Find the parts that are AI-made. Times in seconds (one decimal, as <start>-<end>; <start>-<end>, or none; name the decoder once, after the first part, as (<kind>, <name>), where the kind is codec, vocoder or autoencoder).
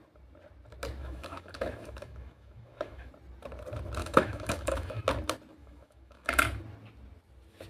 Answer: 1.0-3.1 (autoencoder, DAC-VAE); 4.0-5.0; 5.6-6.4